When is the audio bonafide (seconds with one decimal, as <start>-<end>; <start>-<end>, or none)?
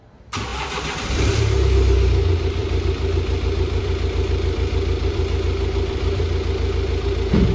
0.0-0.5; 1.4-2.6; 7.1-7.5